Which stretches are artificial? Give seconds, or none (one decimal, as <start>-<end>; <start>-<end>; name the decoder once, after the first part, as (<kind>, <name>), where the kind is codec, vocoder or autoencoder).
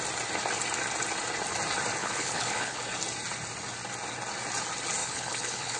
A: 2.0-2.8 (codec, HILCodec); 5.0-5.8